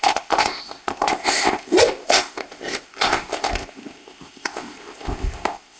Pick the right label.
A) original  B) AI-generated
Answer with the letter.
B